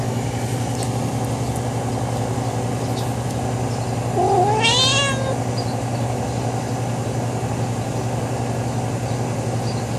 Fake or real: real